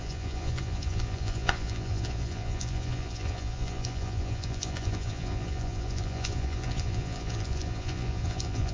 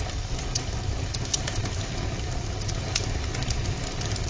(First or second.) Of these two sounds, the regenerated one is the first